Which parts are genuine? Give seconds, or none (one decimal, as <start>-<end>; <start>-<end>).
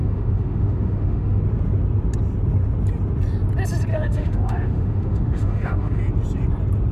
1.4-3.9; 6.0-6.9